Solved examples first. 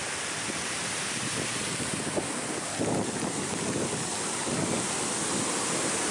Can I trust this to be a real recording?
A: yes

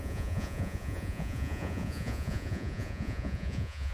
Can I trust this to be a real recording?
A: no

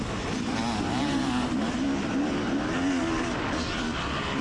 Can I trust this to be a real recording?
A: yes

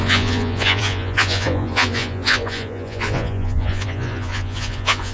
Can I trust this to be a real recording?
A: no